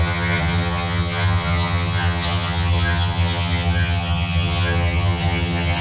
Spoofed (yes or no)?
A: yes